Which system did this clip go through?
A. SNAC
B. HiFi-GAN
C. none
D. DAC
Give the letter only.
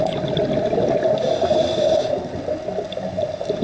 C